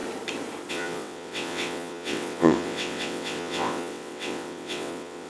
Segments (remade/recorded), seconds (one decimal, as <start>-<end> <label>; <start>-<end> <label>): 0.0-0.7 recorded; 0.7-5.3 remade